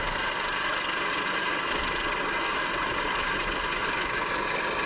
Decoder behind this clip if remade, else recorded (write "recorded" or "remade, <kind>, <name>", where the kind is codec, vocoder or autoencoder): recorded